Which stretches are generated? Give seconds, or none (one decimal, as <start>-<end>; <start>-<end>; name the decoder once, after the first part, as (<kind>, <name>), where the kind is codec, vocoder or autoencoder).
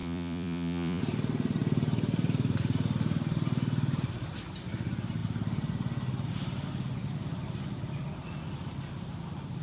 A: 0.0-1.0 (vocoder, Vocos)